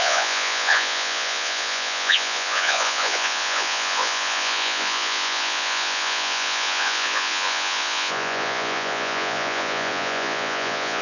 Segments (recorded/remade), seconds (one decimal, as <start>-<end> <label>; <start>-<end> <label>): 0.0-11.0 remade